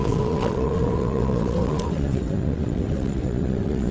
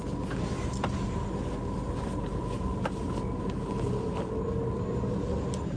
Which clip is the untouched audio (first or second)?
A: second